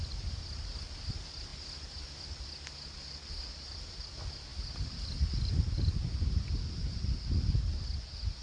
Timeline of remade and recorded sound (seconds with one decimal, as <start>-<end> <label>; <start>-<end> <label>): 0.0-8.4 recorded